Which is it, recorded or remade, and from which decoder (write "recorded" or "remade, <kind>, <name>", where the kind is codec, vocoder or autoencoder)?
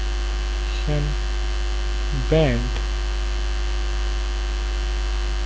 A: recorded